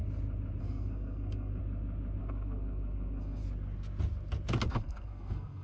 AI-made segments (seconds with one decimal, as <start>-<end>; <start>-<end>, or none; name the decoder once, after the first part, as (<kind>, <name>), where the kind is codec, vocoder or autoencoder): 0.6-1.6 (codec, SNAC); 2.2-3.4; 4.7-5.6